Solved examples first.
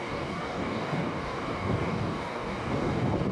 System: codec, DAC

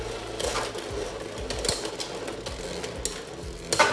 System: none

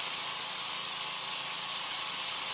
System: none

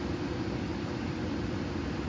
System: none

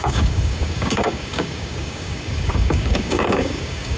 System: codec, DAC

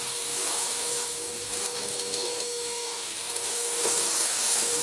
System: codec, DAC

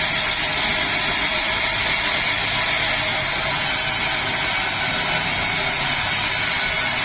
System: none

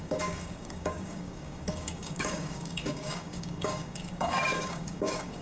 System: codec, DAC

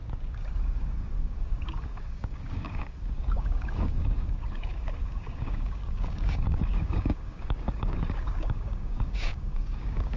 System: codec, DAC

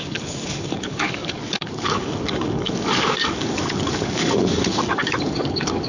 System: codec, DAC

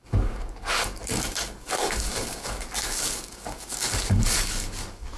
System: codec, DAC